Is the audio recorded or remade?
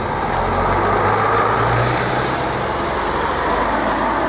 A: recorded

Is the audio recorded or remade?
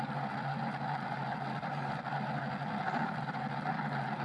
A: recorded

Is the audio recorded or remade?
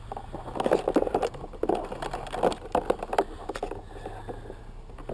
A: recorded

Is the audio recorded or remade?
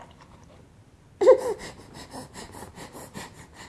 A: recorded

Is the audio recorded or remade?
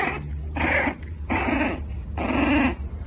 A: recorded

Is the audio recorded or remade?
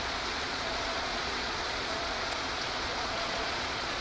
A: remade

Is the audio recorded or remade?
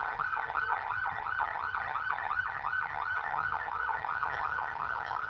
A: remade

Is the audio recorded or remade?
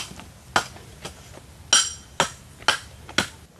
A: recorded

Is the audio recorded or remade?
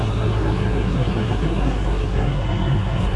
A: remade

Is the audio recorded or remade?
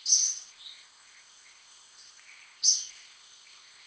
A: remade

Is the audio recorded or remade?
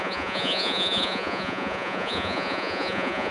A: remade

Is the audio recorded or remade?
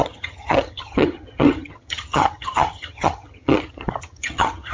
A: remade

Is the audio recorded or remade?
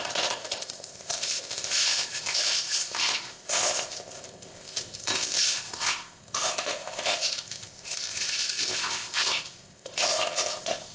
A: remade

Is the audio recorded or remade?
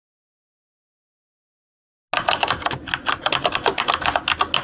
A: recorded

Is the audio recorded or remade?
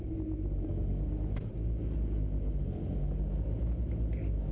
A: recorded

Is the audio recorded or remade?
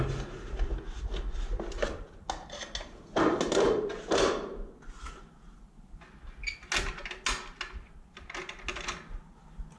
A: recorded